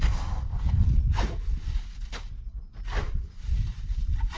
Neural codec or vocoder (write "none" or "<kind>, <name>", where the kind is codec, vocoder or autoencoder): none